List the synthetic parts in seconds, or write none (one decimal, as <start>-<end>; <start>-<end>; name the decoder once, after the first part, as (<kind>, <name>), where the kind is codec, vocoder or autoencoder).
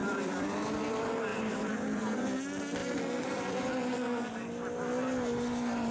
0.0-0.8 (vocoder, BigVGAN v2); 1.3-2.0; 2.8-3.7